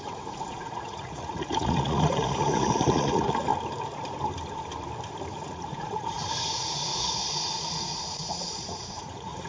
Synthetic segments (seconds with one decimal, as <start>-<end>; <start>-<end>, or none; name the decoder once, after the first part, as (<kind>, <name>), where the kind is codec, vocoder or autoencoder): 0.0-3.5 (vocoder, Vocos); 5.3-9.5